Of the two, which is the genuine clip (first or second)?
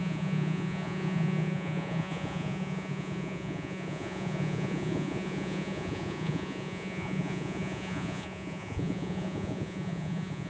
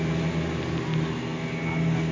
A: second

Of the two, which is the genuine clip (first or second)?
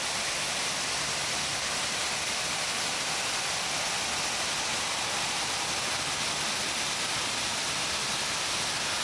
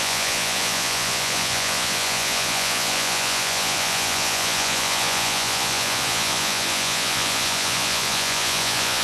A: first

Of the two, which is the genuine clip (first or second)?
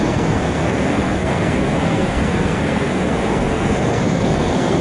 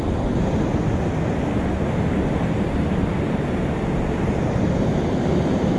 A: second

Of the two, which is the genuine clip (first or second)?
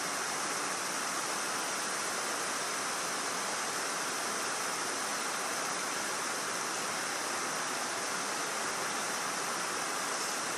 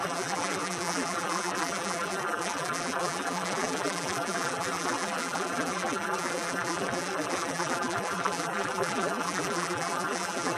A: first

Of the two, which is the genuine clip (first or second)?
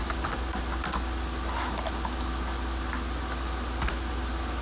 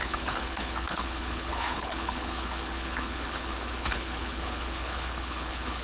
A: first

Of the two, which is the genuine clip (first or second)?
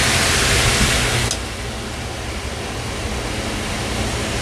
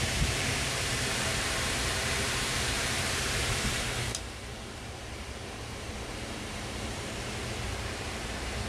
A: first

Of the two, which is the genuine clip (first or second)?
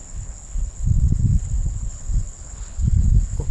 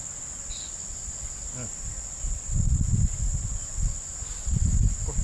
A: second